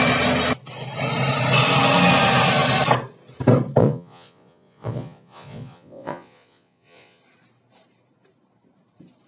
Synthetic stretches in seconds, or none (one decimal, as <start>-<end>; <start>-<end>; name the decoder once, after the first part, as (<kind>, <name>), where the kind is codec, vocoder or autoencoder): 3.8-7.2 (vocoder, Vocos)